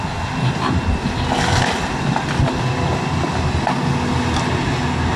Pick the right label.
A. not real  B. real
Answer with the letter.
B